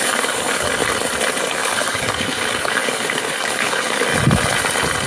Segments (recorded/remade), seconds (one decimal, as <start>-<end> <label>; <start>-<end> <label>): 0.0-0.8 remade; 0.8-1.4 recorded; 1.4-4.1 remade; 4.1-5.1 recorded